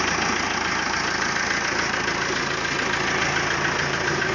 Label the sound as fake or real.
real